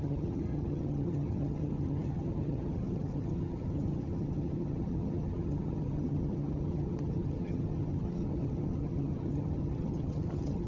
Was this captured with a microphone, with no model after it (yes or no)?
no